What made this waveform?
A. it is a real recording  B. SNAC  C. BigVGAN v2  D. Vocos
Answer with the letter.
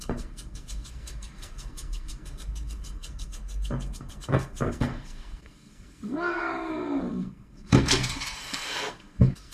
B